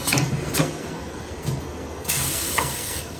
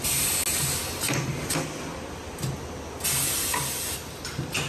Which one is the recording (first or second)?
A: second